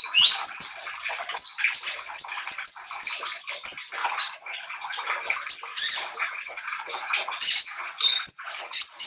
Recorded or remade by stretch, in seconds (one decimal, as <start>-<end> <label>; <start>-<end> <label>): 0.0-4.0 recorded; 4.0-5.1 remade; 5.1-5.7 recorded; 5.7-9.1 remade